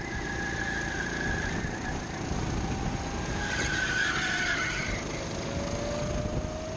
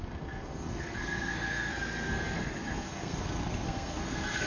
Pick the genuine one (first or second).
first